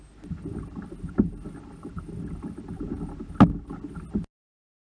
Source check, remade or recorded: recorded